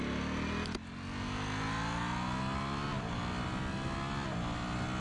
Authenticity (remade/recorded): recorded